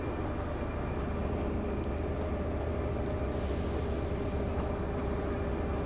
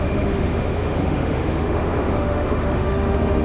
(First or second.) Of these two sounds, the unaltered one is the first